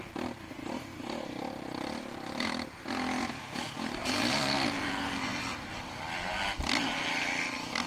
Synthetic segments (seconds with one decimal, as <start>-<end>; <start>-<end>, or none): 4.0-4.7; 5.3-7.9